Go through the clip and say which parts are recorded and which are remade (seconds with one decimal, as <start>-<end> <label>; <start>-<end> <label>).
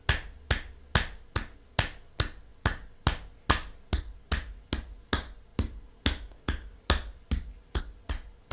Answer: 0.0-8.5 recorded